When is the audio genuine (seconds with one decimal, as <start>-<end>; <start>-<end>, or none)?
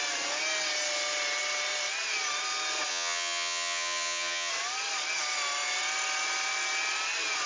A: 0.0-2.9; 4.5-7.5